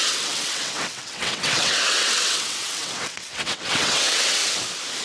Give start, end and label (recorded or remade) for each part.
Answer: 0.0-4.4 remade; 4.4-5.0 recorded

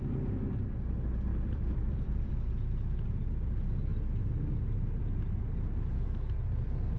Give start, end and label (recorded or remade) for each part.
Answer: 0.0-1.3 recorded; 1.3-2.3 remade; 2.3-7.0 recorded

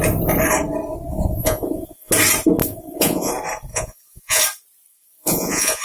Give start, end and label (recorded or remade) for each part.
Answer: 0.0-1.1 recorded; 1.1-2.1 remade; 2.1-2.6 recorded; 2.6-3.3 remade; 3.3-3.7 recorded; 3.7-4.4 remade; 4.4-4.9 recorded; 4.9-5.8 remade

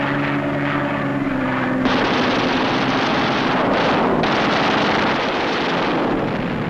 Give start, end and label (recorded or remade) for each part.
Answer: 0.0-6.7 recorded

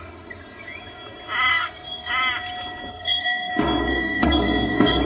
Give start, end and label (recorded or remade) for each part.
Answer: 0.0-1.5 recorded; 1.5-2.1 remade; 2.1-2.9 recorded; 2.9-3.5 remade; 3.5-3.9 recorded; 3.9-5.0 remade